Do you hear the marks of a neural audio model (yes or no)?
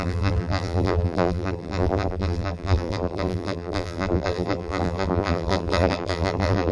yes